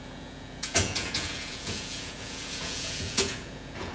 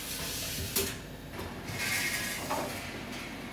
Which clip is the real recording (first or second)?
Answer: second